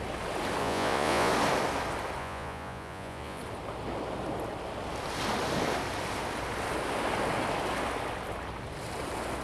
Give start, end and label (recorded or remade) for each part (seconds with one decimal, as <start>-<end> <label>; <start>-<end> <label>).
0.0-0.6 recorded; 0.6-1.3 remade; 1.3-2.2 recorded; 2.2-3.4 remade; 3.4-9.4 recorded